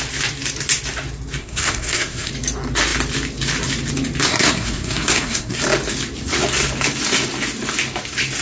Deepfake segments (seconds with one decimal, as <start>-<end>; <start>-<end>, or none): 1.4-2.3; 4.3-5.6